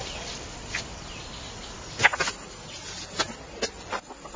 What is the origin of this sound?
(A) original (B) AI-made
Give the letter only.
A